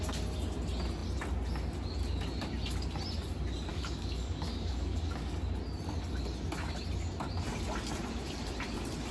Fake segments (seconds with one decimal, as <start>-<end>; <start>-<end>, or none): 3.7-5.4